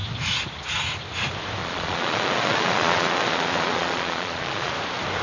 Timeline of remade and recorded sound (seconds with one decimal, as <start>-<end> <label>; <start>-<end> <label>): 0.0-1.6 recorded; 1.6-4.7 remade; 4.7-5.2 recorded